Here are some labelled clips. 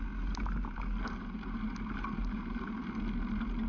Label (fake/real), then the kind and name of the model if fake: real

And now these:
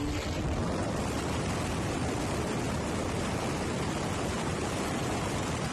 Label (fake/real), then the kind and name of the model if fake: fake, vocoder, BigVGAN v2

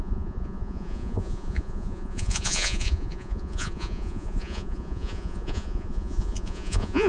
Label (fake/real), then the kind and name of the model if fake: fake, vocoder, Vocos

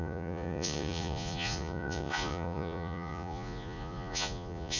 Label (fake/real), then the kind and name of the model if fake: fake, vocoder, Vocos